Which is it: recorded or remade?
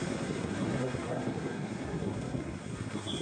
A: remade